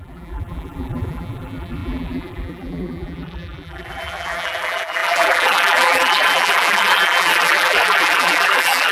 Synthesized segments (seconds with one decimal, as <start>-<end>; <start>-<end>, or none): 0.0-8.9